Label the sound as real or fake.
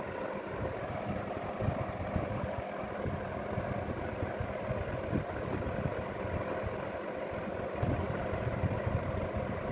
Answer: real